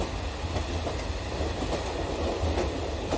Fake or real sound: real